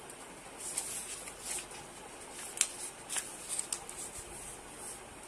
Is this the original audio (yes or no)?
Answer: yes